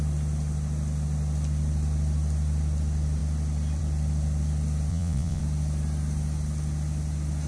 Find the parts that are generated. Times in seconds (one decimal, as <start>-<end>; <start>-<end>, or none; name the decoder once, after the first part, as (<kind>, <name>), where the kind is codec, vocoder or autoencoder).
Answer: 4.9-5.4 (vocoder, Vocos)

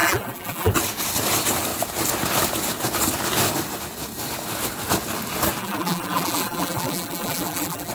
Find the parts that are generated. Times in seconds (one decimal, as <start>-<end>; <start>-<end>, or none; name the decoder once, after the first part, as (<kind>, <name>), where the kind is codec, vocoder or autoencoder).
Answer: 0.0-0.7 (vocoder, BigVGAN v2); 5.6-7.9